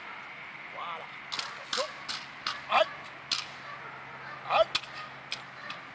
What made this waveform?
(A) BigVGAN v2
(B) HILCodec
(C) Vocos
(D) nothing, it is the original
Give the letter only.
D